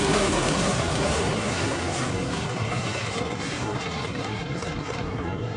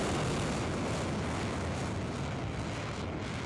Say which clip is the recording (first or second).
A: second